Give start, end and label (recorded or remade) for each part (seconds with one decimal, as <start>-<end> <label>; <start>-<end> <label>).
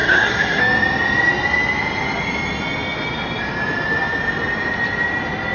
0.0-0.6 remade; 0.6-5.5 recorded